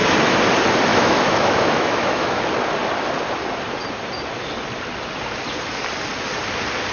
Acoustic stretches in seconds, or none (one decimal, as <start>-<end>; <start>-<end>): 0.0-0.9; 2.4-6.9